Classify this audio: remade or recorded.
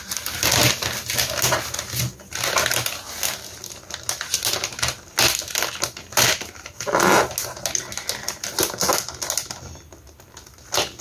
recorded